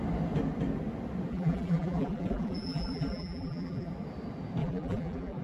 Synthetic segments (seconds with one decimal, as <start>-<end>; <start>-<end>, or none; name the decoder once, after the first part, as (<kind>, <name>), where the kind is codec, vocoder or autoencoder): 1.3-3.9 (vocoder, BigVGAN v2); 4.6-5.4